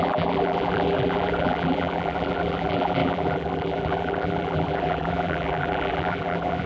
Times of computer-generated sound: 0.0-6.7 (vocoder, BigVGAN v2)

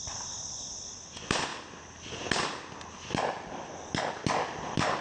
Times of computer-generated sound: none

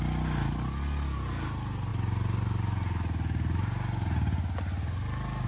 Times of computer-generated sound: none

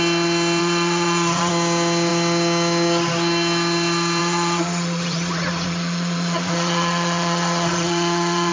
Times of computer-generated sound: 0.6-1.5 (vocoder, Vocos); 4.2-8.5

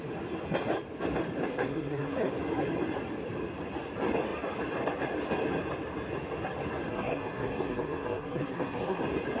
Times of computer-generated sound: 1.5-2.3 (codec, SNAC); 6.9-9.0